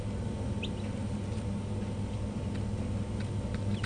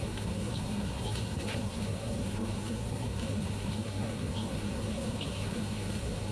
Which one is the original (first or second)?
first